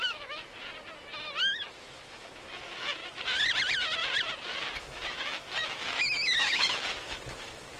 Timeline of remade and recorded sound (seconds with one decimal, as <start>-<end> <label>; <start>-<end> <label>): 0.0-0.6 remade; 0.6-1.4 recorded; 1.4-3.0 remade; 3.0-4.8 recorded; 4.8-7.8 remade